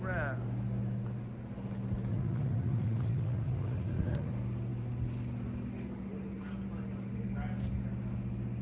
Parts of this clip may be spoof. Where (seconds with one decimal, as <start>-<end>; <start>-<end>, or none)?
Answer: 2.1-4.3